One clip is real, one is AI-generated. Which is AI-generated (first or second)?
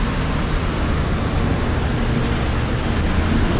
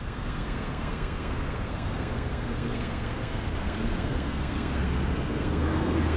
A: second